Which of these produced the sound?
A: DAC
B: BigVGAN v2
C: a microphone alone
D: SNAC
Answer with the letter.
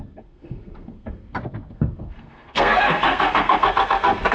D